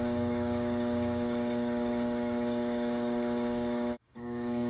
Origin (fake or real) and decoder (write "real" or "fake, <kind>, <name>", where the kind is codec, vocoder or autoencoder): fake, codec, DAC